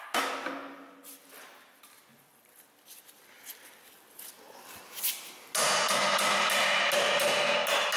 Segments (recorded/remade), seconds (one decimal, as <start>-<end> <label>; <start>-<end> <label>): 0.0-8.0 recorded